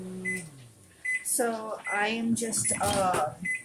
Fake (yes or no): no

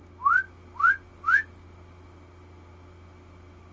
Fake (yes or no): no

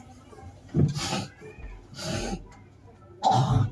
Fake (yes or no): no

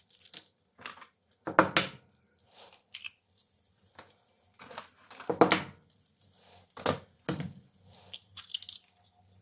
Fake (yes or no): no